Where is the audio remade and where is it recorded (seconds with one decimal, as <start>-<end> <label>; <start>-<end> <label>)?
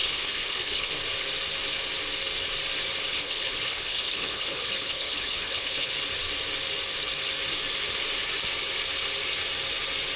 0.0-0.9 remade; 0.9-3.1 recorded; 3.1-5.9 remade; 5.9-10.2 recorded